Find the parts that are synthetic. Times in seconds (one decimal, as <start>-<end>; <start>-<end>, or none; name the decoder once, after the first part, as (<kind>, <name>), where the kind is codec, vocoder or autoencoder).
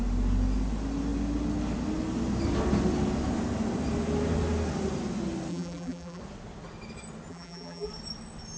5.5-6.2 (vocoder, BigVGAN v2); 7.3-7.9